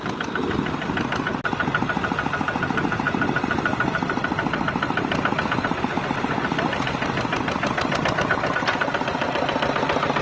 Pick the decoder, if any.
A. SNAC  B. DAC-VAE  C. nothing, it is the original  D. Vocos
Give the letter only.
C